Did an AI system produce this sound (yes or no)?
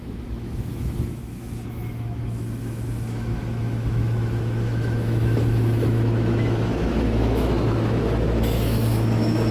yes